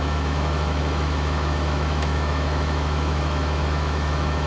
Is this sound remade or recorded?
remade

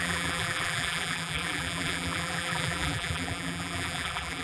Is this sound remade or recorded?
remade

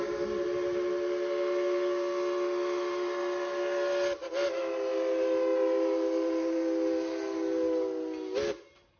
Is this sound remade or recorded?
recorded